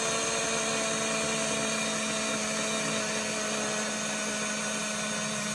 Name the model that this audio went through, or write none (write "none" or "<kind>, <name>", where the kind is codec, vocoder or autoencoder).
none